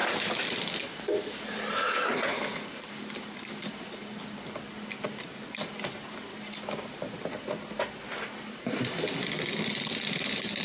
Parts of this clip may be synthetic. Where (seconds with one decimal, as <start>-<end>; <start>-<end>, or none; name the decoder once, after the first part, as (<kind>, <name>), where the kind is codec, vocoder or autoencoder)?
none